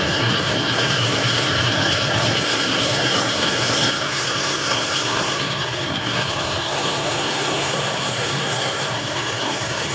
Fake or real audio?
fake